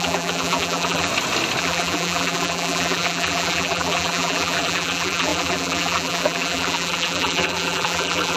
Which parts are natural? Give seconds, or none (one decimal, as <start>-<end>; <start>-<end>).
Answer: 1.1-1.6